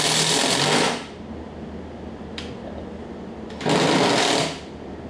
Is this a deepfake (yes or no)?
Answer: no